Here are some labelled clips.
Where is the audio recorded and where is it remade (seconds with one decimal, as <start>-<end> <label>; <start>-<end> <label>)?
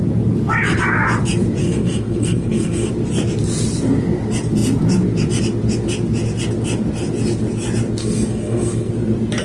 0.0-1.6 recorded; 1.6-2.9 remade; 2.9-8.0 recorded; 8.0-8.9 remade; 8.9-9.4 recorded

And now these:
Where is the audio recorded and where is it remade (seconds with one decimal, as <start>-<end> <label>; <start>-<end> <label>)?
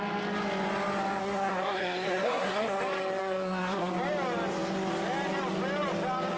0.0-1.2 recorded; 1.2-2.8 remade; 2.8-3.2 recorded; 3.2-3.9 remade; 3.9-6.4 recorded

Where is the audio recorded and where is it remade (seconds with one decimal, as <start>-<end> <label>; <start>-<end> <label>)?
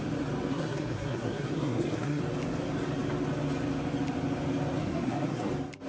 0.0-0.5 recorded; 0.5-2.2 remade; 2.2-4.8 recorded; 4.8-5.5 remade; 5.5-5.9 recorded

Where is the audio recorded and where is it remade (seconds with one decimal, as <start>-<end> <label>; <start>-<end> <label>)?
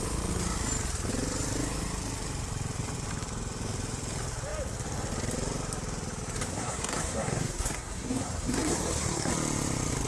0.0-6.5 recorded; 6.5-9.3 remade; 9.3-10.1 recorded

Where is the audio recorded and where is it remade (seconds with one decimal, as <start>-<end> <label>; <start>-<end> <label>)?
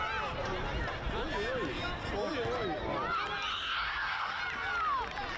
0.0-3.5 recorded; 3.5-4.4 remade; 4.4-5.4 recorded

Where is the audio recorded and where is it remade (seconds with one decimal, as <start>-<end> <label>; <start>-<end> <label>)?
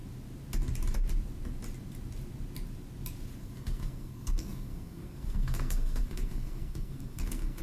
0.0-3.4 recorded; 3.4-7.6 remade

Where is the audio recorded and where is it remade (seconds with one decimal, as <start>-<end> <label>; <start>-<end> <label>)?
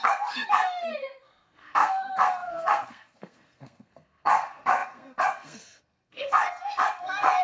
0.0-7.4 remade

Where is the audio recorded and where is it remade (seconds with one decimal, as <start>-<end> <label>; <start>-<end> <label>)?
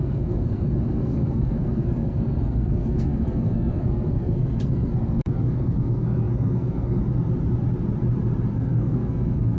0.0-7.0 remade; 7.0-8.5 recorded; 8.5-9.6 remade